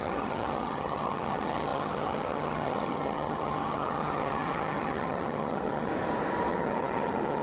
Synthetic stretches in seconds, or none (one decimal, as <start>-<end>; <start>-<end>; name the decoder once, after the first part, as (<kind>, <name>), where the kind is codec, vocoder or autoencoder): 0.0-5.9 (vocoder, HiFi-GAN); 6.5-7.4